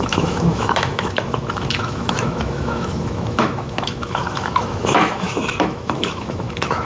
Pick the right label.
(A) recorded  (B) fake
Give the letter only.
B